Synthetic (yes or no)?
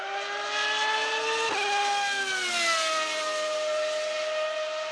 no